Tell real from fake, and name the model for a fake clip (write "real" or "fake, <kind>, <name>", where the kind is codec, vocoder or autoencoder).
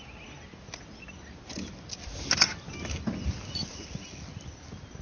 real